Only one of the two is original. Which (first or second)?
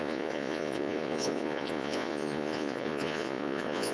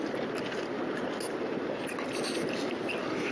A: second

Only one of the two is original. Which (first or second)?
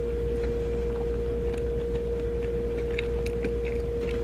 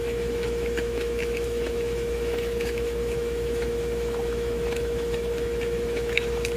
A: first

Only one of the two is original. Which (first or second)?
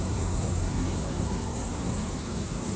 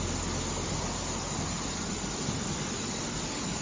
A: second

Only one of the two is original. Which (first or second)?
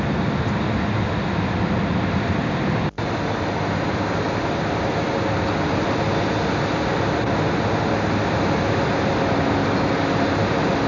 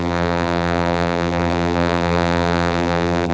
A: first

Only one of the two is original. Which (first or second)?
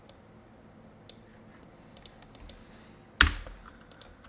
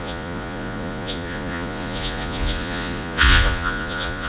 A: first